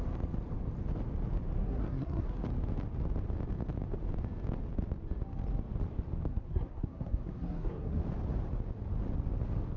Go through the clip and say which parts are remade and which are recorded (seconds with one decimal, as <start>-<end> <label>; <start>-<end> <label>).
0.0-1.6 recorded; 1.6-2.4 remade; 2.4-6.3 recorded; 6.3-8.0 remade; 8.0-9.8 recorded